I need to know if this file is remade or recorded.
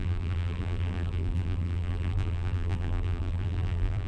remade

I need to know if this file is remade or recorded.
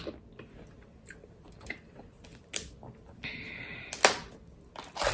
recorded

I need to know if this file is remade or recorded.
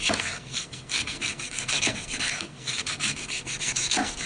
remade